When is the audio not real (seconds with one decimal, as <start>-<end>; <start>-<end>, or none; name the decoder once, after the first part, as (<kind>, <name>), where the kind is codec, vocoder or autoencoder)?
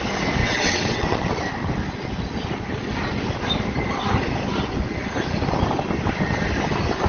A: 0.4-1.3 (vocoder, WaveNeXt)